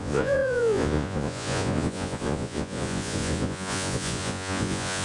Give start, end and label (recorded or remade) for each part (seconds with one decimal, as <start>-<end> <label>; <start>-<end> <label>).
0.0-5.0 remade